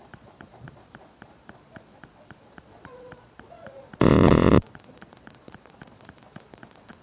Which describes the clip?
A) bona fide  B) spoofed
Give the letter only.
B